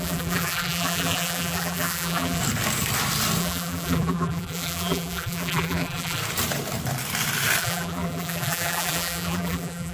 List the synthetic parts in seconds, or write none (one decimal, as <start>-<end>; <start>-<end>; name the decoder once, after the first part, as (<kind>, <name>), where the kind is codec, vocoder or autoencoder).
0.0-2.4 (vocoder, BigVGAN v2); 3.4-6.2; 7.6-9.9

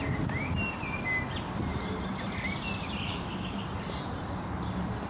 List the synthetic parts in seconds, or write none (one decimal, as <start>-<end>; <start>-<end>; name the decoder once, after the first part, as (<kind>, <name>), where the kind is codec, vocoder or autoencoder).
3.1-3.6 (codec, DAC)

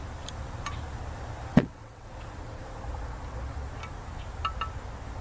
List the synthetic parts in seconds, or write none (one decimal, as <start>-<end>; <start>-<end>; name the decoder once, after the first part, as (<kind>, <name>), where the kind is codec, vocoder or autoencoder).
1.5-2.1 (vocoder, WaveNeXt)